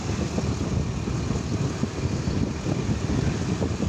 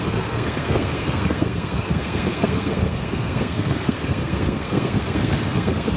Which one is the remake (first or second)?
second